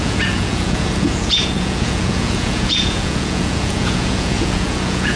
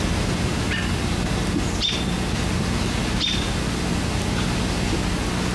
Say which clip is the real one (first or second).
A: second